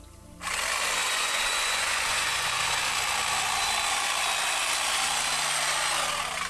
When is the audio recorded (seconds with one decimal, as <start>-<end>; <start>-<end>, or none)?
0.0-1.0; 2.7-6.5